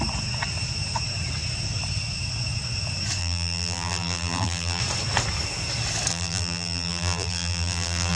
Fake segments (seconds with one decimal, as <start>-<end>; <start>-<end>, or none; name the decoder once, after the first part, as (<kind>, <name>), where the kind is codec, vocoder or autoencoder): 3.2-4.8 (vocoder, BigVGAN v2); 6.1-8.2